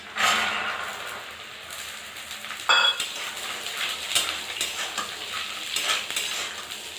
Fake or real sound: real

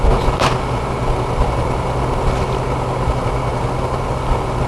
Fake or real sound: real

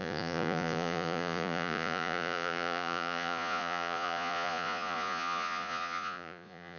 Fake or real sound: fake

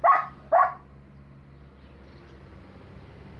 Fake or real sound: real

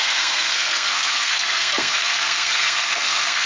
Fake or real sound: fake